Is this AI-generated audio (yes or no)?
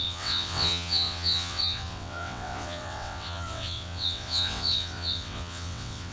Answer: yes